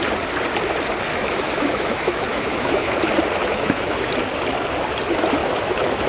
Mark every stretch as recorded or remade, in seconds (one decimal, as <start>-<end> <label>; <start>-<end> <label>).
0.0-1.1 recorded; 1.1-3.0 remade; 3.0-3.4 recorded; 3.4-4.1 remade; 4.1-5.4 recorded; 5.4-6.1 remade

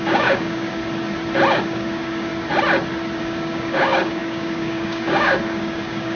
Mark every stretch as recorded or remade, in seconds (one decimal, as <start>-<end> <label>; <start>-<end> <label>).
0.0-0.8 remade; 0.8-1.5 recorded; 1.5-2.3 remade; 2.3-3.2 recorded; 3.2-6.2 remade

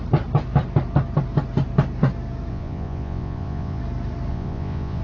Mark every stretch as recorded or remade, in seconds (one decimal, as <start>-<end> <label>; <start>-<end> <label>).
0.0-2.5 recorded; 2.5-3.8 remade; 3.8-4.3 recorded; 4.3-5.0 remade